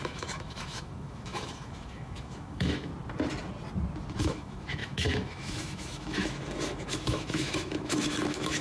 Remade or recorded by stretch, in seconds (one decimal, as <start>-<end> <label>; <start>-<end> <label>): 0.0-2.9 remade; 2.9-4.2 recorded; 4.2-8.6 remade